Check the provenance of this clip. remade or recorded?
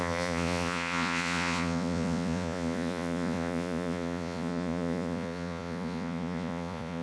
remade